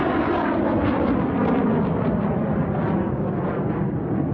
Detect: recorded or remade recorded